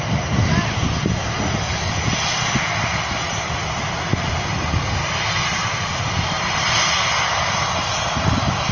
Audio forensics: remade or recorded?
recorded